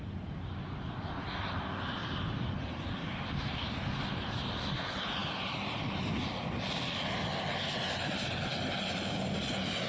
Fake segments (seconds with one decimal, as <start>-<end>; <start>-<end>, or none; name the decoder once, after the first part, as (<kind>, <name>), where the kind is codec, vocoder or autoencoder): 2.0-2.6 (vocoder, BigVGAN v2); 5.2-6.1